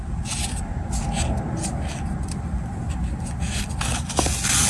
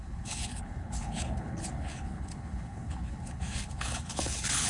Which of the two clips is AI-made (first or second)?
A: second